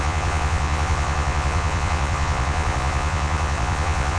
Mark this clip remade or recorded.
remade